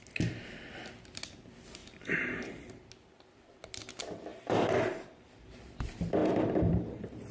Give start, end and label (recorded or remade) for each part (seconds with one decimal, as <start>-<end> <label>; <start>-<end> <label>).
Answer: 0.0-1.8 recorded; 1.8-2.7 remade; 2.7-4.3 recorded; 4.3-5.6 remade; 5.6-6.2 recorded; 6.2-7.3 remade